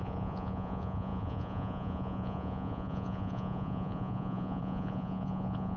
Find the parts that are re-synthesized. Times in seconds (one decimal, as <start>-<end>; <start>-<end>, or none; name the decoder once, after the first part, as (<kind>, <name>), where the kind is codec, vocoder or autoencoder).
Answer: 0.0-5.8 (vocoder, Vocos)